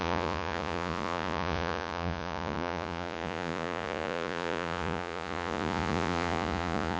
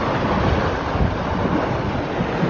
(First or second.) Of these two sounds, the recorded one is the second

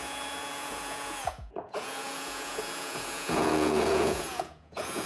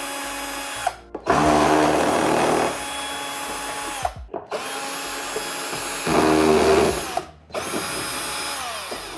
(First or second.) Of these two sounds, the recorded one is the second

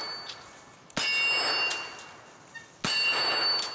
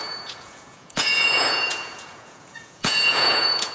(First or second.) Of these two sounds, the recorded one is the first